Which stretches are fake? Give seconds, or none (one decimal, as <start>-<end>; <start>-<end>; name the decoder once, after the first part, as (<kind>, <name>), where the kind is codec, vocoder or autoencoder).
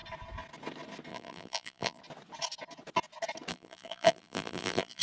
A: 1.1-2.0 (vocoder, BigVGAN v2); 3.5-5.0